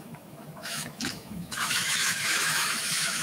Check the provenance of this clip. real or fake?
fake